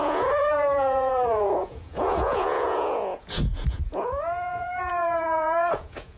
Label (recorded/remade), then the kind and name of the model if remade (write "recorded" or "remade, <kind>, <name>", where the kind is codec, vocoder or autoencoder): remade, vocoder, Vocos